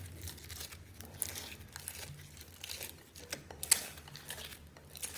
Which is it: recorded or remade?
recorded